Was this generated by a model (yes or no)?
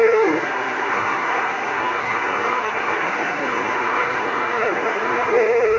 yes